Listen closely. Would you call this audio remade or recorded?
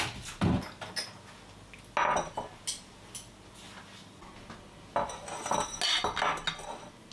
recorded